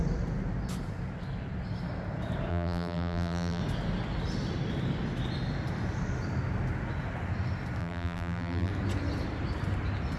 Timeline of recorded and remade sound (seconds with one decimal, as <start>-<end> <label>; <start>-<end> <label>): 0.0-2.5 recorded; 2.5-3.6 remade; 3.6-7.8 recorded; 7.8-8.7 remade; 8.7-10.2 recorded